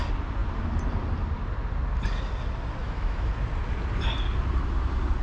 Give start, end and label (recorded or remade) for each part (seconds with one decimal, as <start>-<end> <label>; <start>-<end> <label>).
0.0-2.8 recorded; 2.8-3.3 remade; 3.3-5.2 recorded